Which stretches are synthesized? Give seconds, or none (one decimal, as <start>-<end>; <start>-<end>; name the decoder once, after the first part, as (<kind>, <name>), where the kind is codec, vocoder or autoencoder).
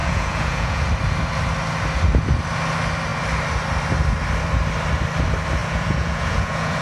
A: 0.0-0.9 (vocoder, Vocos); 5.6-6.8